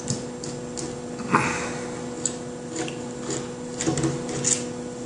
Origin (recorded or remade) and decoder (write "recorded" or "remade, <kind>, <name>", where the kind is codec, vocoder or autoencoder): recorded